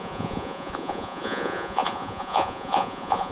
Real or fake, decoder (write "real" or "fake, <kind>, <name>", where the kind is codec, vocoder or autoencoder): fake, vocoder, Vocos